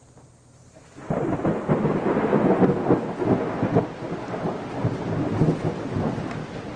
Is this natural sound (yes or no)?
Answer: yes